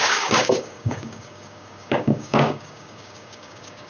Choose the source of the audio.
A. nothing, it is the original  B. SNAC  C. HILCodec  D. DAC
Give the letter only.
D